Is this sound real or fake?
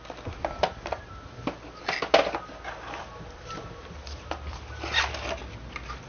real